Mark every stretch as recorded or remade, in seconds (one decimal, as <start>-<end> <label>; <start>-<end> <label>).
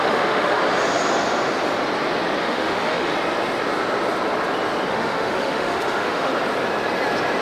0.0-0.6 remade; 0.6-2.4 recorded; 2.4-3.1 remade; 3.1-4.9 recorded; 4.9-6.3 remade; 6.3-7.4 recorded